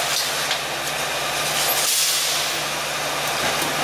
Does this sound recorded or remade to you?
recorded